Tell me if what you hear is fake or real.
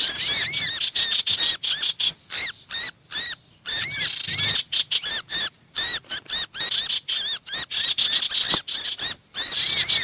real